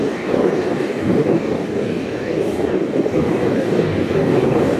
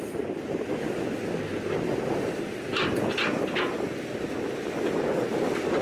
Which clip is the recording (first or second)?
second